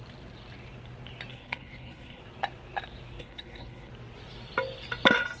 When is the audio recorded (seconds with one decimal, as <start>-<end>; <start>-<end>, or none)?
0.0-1.3; 2.2-3.2; 3.9-5.4